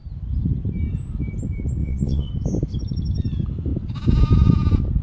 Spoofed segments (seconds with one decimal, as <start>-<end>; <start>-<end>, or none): 1.8-2.3